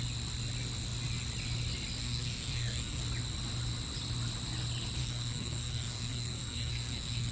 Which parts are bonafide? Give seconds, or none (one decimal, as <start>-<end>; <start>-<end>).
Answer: 0.0-2.0; 3.0-5.0